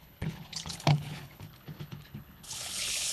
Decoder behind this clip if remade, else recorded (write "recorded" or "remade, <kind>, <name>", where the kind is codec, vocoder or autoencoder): remade, codec, HILCodec